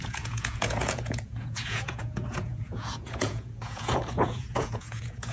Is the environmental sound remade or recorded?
remade